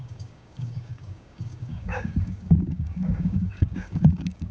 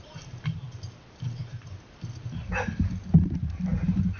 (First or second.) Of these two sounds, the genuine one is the second